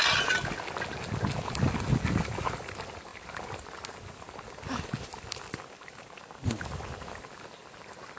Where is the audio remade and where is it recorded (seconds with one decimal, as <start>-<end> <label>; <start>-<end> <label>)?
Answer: 0.0-8.2 recorded